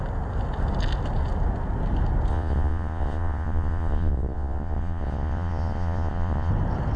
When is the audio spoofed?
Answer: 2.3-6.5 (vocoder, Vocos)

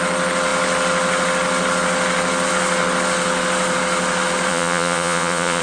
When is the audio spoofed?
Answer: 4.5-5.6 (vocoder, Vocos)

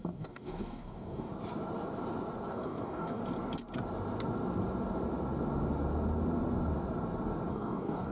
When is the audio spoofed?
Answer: 0.0-1.3 (codec, DAC); 2.5-3.2; 7.5-8.1